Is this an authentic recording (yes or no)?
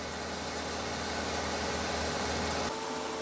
yes